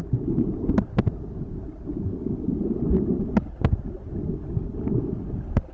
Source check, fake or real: real